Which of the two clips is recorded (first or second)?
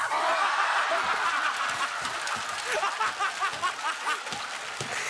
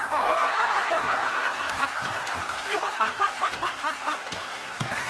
first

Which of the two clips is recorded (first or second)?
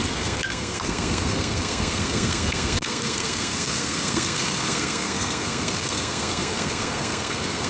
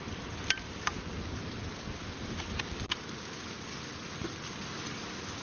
second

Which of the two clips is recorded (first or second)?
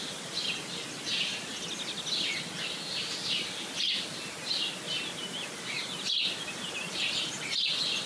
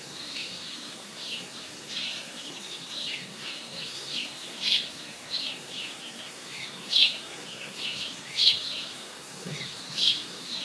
first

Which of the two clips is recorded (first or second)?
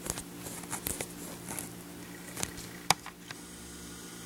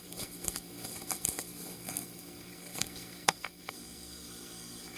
first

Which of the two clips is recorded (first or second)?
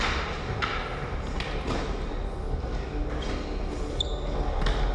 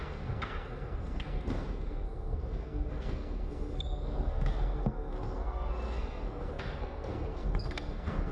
first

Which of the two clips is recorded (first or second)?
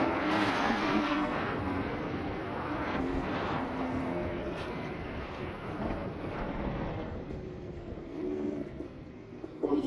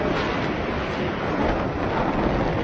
second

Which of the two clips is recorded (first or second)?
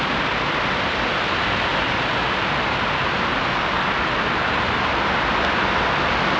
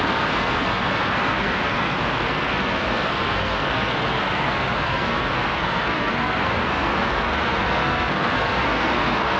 first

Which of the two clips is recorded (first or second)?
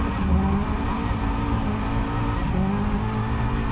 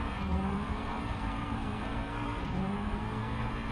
first